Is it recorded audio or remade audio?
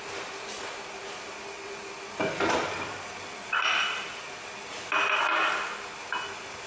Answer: recorded